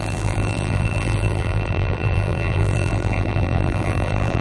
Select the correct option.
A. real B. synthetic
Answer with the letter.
B